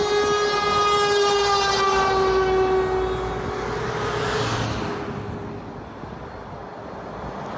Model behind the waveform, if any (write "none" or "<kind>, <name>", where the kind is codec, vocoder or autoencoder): none